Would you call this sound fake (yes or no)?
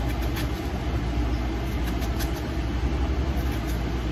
no